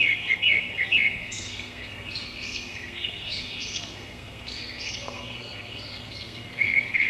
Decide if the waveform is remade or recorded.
remade